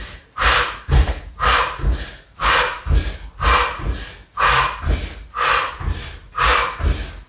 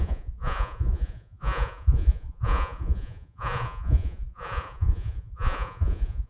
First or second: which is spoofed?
second